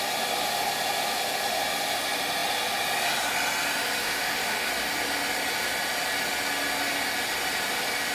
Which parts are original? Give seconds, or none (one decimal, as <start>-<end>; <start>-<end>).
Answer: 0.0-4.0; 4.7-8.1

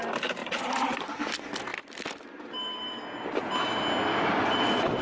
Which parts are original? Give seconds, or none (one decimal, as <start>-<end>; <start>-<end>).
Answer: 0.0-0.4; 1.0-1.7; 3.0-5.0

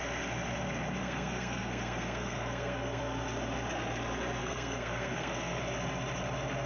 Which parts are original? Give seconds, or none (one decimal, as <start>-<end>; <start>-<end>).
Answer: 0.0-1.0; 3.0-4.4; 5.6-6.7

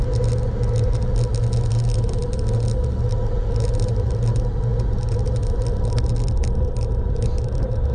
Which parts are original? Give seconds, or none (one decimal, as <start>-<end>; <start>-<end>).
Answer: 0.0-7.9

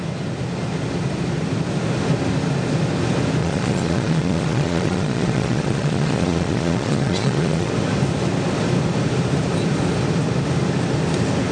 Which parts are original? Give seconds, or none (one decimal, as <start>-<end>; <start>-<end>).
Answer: 0.0-3.4; 7.7-11.5

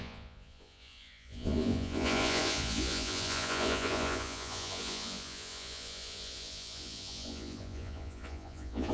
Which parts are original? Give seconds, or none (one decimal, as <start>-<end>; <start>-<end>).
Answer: none

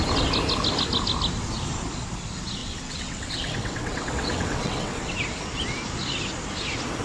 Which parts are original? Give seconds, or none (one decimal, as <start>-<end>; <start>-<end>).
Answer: 0.0-2.6; 5.1-7.0

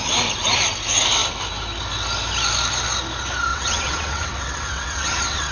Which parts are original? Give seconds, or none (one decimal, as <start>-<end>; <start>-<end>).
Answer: 0.0-3.5